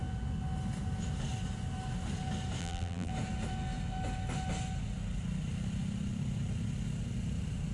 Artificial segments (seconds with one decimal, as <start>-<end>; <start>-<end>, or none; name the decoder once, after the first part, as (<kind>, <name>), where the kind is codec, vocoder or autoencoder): 2.6-3.1 (vocoder, BigVGAN v2)